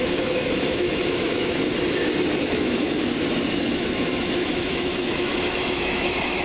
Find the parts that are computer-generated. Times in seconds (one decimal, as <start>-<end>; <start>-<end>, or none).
0.0-1.7; 2.4-3.0; 3.6-6.4